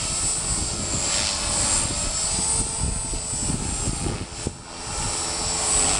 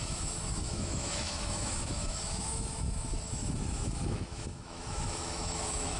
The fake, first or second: second